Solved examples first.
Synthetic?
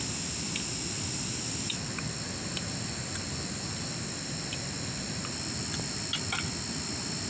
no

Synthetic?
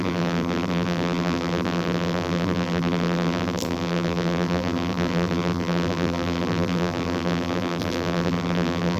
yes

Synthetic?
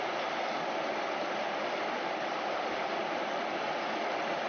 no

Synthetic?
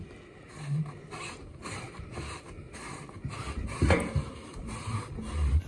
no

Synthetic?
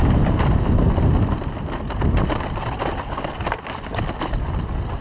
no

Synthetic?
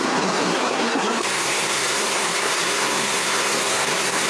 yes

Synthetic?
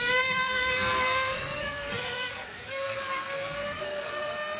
yes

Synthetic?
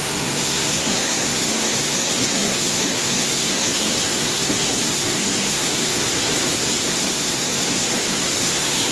yes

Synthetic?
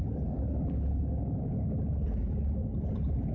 no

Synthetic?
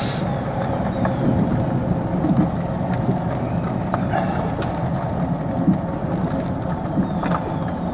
no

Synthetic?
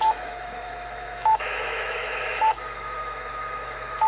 yes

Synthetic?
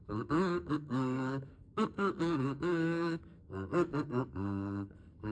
yes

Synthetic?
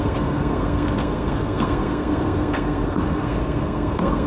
yes